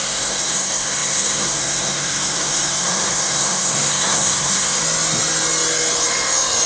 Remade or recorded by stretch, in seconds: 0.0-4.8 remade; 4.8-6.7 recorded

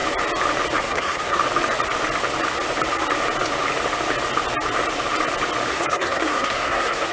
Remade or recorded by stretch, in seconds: 0.0-0.8 recorded; 0.8-1.4 remade; 1.4-5.7 recorded; 5.7-7.1 remade

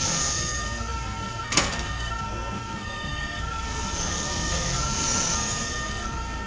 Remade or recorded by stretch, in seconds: 0.0-6.5 remade

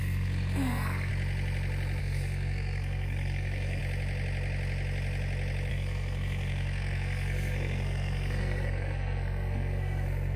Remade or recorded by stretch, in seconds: 0.0-1.1 remade; 1.1-2.0 recorded; 2.0-3.8 remade; 3.8-5.7 recorded; 5.7-10.4 remade

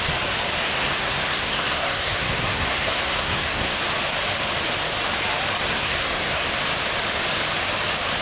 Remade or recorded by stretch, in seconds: 0.0-0.6 recorded; 0.6-3.8 remade; 3.8-5.7 recorded; 5.7-6.5 remade; 6.5-8.2 recorded